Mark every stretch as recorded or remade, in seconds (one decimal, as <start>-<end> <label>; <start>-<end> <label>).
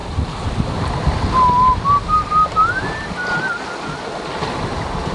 0.0-5.1 recorded